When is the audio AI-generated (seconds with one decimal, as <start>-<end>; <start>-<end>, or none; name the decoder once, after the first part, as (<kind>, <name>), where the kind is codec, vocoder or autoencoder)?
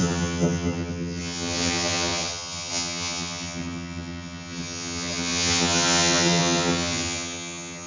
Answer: 0.0-7.9 (vocoder, HiFi-GAN)